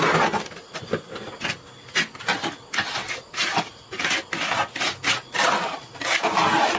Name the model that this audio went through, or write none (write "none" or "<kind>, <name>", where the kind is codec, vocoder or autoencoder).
none